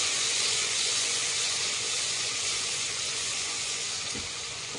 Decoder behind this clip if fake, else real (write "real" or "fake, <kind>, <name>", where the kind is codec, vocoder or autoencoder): fake, vocoder, Vocos